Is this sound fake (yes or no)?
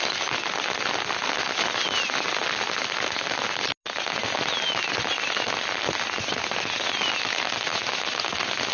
no